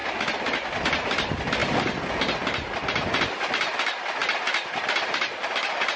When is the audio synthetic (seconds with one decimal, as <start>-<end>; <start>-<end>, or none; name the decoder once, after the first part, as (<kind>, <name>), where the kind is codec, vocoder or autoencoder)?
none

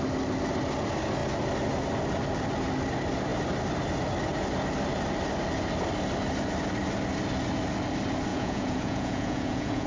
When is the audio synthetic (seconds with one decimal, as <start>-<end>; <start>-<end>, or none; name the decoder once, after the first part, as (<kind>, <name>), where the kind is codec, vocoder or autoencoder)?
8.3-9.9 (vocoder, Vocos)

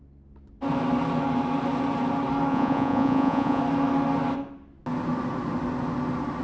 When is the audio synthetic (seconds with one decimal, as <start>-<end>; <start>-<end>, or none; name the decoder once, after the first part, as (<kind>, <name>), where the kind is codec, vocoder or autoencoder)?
2.5-3.6 (vocoder, Vocos)

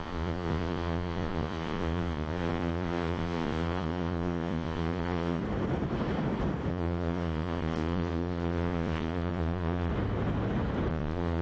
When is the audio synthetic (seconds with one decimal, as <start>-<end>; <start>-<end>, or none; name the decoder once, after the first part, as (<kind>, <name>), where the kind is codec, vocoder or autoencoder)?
0.0-5.4 (vocoder, Vocos); 6.7-9.9; 10.9-11.4